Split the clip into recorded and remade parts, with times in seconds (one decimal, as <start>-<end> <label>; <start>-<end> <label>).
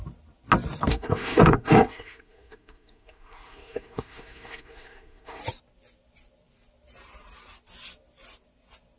0.0-0.9 recorded; 0.9-5.4 remade; 5.4-9.0 recorded